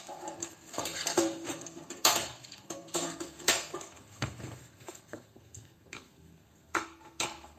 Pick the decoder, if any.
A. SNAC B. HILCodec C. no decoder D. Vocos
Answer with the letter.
A